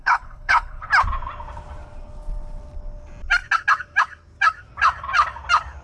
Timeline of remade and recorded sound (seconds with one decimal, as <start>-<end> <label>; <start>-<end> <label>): 0.0-0.9 remade; 0.9-5.8 recorded